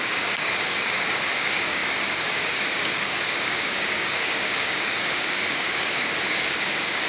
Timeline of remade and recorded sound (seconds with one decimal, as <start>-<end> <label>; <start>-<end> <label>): 0.0-7.1 remade